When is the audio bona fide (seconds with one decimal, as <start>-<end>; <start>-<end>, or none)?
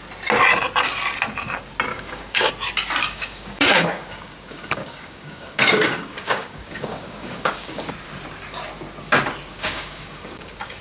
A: 0.0-1.9; 2.5-3.0; 7.8-9.5